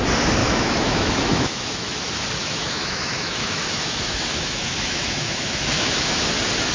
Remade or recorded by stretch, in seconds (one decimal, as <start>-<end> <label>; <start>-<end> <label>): 0.0-0.4 recorded; 0.4-2.0 remade; 2.0-2.4 recorded; 2.4-6.3 remade; 6.3-6.7 recorded

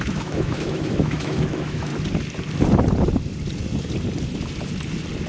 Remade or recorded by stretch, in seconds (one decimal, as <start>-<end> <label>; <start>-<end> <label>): 0.0-1.9 remade; 1.9-5.3 recorded